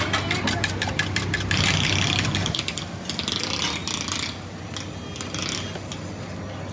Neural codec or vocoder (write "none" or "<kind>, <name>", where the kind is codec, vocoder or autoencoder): none